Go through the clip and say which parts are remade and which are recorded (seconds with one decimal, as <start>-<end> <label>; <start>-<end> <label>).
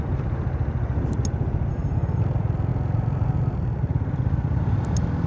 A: 0.0-1.7 recorded; 1.7-2.2 remade; 2.2-5.3 recorded